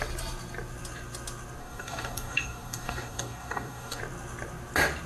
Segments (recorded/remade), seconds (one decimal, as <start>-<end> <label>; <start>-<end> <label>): 0.0-1.6 recorded; 1.6-4.0 remade; 4.0-5.1 recorded